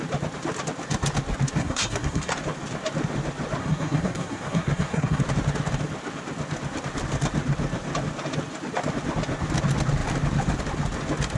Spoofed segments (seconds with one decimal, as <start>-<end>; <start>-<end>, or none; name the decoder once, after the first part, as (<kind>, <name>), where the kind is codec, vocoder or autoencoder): 1.6-2.3 (codec, SNAC); 3.6-5.2